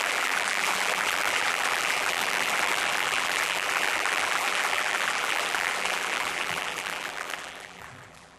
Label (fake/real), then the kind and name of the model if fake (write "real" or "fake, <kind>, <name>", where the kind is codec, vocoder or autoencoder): fake, vocoder, BigVGAN v2